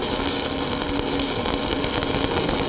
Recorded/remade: recorded